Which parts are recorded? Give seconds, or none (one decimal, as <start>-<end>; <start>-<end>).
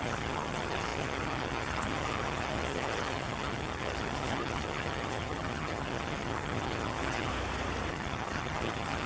7.3-7.9